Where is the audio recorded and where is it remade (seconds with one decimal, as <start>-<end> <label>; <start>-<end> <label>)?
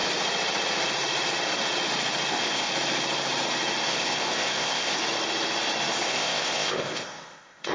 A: 0.0-2.3 recorded; 2.3-2.7 remade; 2.7-3.9 recorded; 3.9-5.0 remade; 5.0-5.9 recorded; 5.9-7.7 remade